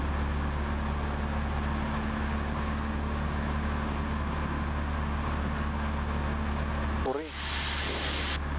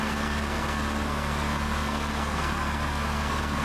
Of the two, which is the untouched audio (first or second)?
first